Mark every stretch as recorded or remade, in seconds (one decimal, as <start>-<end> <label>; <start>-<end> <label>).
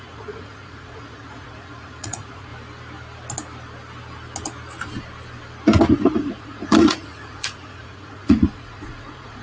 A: 0.0-2.5 remade; 2.5-5.9 recorded; 5.9-9.4 remade